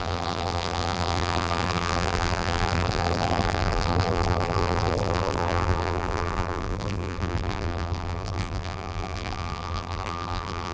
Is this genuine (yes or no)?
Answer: no